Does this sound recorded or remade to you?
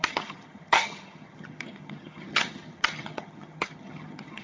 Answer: remade